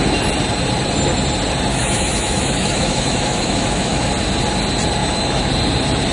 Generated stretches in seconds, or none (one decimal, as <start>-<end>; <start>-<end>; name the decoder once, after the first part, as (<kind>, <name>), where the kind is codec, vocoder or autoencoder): 1.7-4.1 (autoencoder, DAC-VAE); 5.0-5.5